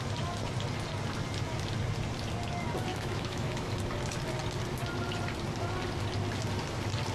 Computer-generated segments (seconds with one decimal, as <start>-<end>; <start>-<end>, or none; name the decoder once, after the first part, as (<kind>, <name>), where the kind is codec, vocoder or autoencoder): 2.9-3.7 (autoencoder, DAC-VAE)